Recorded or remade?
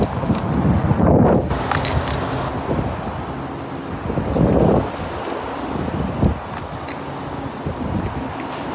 recorded